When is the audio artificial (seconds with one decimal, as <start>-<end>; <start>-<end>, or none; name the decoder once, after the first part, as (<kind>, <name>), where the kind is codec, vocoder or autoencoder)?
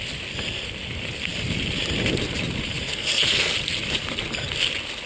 2.9-3.5 (codec, SNAC)